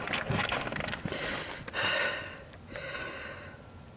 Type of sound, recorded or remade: recorded